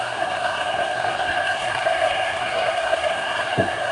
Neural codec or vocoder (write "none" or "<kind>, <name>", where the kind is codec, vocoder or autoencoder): codec, SNAC